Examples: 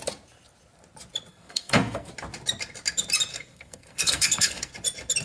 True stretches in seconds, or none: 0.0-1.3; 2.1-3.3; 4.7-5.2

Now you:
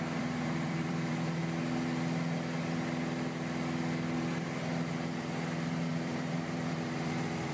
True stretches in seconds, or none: 1.4-5.9

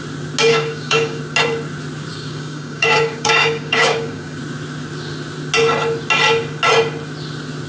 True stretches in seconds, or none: 0.0-0.5; 1.2-2.1; 4.4-7.7

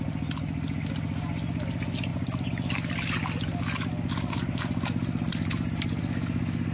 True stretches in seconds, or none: 0.0-6.7